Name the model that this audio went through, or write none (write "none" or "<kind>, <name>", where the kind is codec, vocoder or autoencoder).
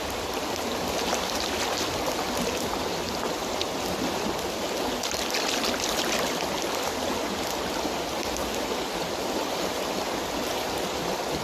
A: none